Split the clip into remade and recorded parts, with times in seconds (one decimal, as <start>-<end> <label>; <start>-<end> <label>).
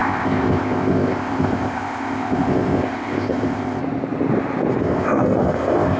0.0-3.8 remade; 3.8-4.8 recorded; 4.8-6.0 remade